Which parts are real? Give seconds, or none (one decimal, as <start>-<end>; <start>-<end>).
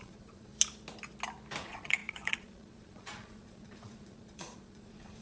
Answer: 0.5-1.6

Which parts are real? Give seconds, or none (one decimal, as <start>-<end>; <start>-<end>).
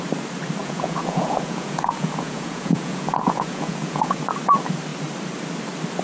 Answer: 0.0-0.6; 4.2-6.0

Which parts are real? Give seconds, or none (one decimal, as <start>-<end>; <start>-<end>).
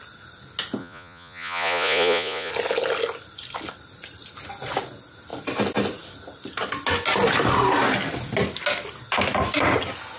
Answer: 0.0-0.8; 2.5-10.2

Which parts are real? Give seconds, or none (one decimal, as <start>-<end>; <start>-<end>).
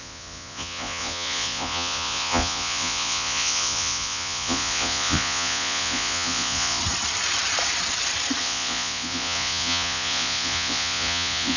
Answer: 6.8-8.4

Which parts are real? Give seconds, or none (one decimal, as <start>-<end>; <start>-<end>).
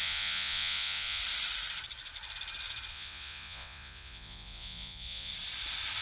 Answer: 1.2-2.9; 5.3-6.0